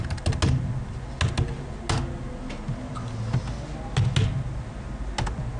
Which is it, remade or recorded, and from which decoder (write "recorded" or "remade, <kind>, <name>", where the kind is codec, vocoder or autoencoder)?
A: recorded